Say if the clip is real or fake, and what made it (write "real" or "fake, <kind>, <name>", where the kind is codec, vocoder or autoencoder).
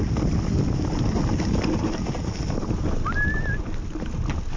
real